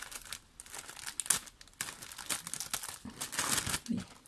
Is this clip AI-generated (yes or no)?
no